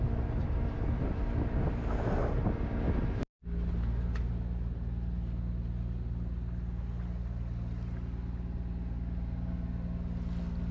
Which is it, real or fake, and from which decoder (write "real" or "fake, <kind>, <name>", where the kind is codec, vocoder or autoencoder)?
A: real